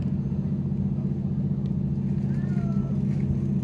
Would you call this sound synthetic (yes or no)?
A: no